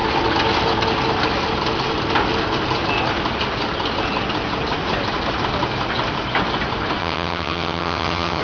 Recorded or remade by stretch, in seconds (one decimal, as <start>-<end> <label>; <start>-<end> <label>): 0.0-7.0 recorded; 7.0-8.4 remade